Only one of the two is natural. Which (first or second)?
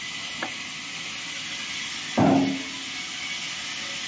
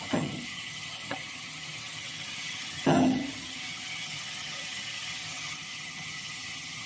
first